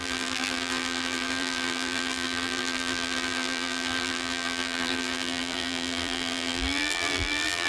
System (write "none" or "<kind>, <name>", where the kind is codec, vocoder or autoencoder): vocoder, BigVGAN v2